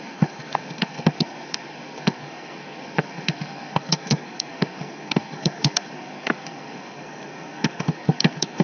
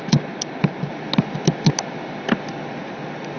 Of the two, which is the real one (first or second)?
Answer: second